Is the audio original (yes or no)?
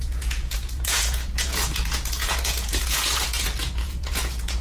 no